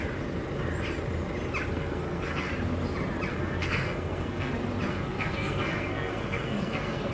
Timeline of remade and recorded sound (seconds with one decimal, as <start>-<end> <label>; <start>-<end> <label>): 0.0-1.7 recorded; 1.7-2.5 remade; 2.5-3.3 recorded; 3.3-4.5 remade; 4.5-4.9 recorded; 4.9-7.1 remade